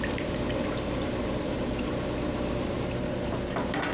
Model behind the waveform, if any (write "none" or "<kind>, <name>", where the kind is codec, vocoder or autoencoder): none